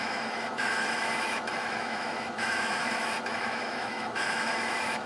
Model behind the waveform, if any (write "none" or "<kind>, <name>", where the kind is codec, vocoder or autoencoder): autoencoder, DAC-VAE